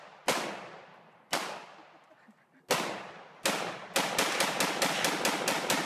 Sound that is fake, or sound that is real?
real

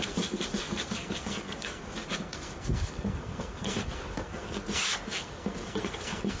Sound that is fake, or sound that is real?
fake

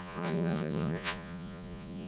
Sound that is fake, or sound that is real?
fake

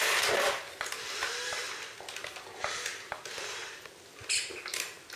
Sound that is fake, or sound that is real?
real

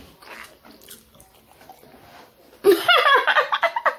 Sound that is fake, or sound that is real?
real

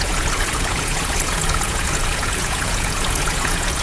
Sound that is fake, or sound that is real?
fake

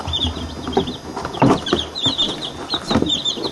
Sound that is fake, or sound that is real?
real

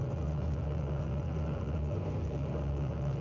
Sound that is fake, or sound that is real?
fake